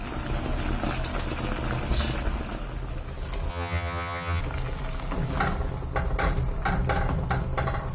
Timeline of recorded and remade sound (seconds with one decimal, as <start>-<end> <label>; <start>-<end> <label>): 0.0-3.5 recorded; 3.5-4.4 remade; 4.4-7.9 recorded